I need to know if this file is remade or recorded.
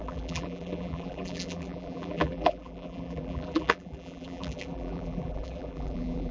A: remade